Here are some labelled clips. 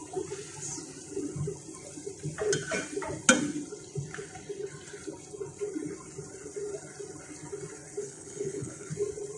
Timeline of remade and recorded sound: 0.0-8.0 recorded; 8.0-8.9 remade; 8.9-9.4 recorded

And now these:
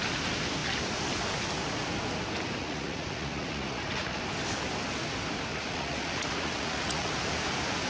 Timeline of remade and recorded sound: 0.0-2.6 recorded; 2.6-4.2 remade; 4.2-5.5 recorded; 5.5-7.1 remade; 7.1-7.9 recorded

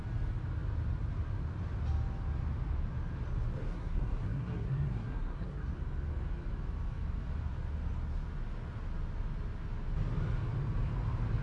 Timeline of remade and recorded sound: 0.0-3.7 recorded; 3.7-5.7 remade; 5.7-11.4 recorded

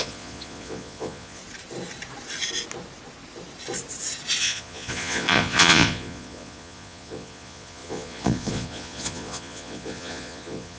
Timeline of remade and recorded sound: 0.0-1.4 remade; 1.4-4.4 recorded; 4.4-10.8 remade

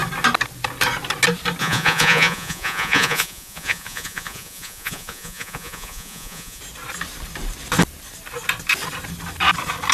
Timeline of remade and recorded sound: 0.0-1.6 recorded; 1.6-6.6 remade; 6.6-9.9 recorded

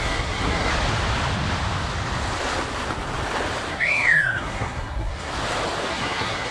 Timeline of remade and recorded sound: 0.0-0.7 remade; 0.7-3.7 recorded; 3.7-5.3 remade; 5.3-5.9 recorded; 5.9-6.5 remade